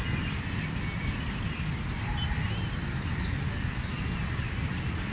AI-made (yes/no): no